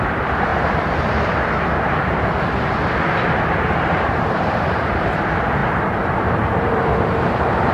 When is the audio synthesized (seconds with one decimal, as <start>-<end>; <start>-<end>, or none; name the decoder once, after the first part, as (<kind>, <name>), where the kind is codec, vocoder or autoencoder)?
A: 0.0-0.5 (vocoder, BigVGAN v2); 3.4-7.7